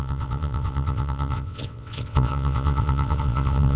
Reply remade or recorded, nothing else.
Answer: remade